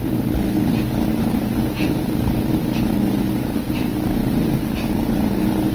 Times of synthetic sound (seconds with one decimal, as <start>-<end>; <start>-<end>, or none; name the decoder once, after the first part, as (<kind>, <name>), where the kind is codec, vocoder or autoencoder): 1.1-2.5 (vocoder, BigVGAN v2)